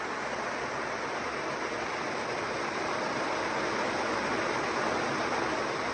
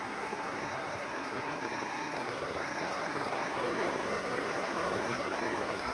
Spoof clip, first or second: second